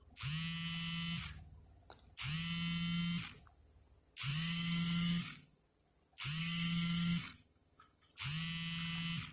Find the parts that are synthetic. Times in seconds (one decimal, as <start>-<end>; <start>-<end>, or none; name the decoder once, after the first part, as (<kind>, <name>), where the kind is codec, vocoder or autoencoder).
4.3-5.6 (codec, DAC); 6.4-8.1